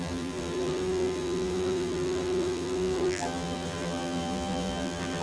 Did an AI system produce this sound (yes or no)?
yes